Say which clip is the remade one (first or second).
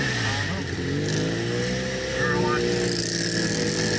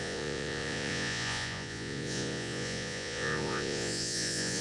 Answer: second